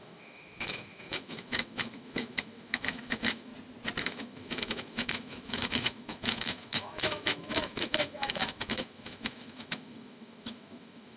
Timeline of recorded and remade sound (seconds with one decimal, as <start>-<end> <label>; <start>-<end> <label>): 0.0-3.5 remade; 3.5-4.0 recorded; 4.0-11.2 remade